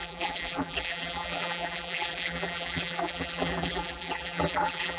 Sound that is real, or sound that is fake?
fake